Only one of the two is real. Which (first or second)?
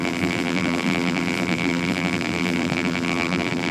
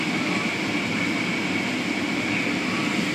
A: second